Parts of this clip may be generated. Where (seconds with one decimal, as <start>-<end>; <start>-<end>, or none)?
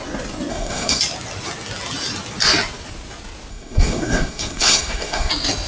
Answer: 0.5-1.0; 3.5-5.3